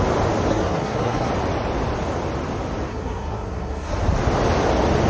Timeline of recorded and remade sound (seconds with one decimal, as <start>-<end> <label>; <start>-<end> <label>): 0.0-0.5 recorded; 0.5-1.3 remade; 1.3-2.9 recorded; 2.9-3.9 remade; 3.9-5.1 recorded